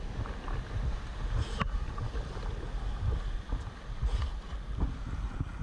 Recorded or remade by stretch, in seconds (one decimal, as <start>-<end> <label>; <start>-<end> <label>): 0.0-5.6 recorded